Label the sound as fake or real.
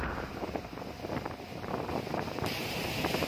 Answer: real